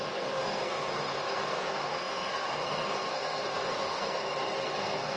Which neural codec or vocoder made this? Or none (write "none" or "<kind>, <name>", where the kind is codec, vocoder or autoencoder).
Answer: codec, SNAC